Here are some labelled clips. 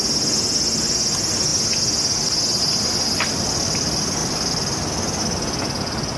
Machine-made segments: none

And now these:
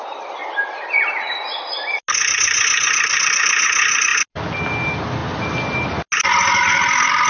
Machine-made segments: none

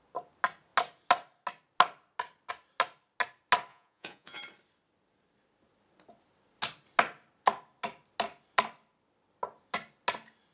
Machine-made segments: 3.7-4.4 (vocoder, Vocos)